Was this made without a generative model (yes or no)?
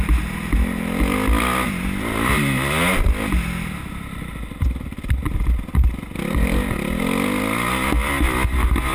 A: yes